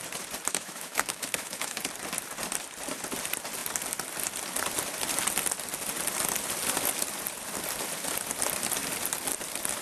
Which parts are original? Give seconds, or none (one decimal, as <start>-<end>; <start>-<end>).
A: 0.0-0.5; 1.8-9.8